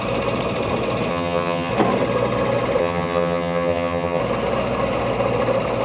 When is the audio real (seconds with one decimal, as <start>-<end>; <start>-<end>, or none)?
0.0-1.1; 1.7-2.8; 4.2-5.8